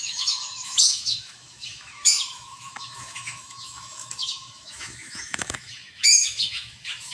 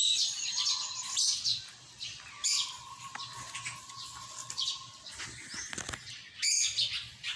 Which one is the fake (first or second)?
first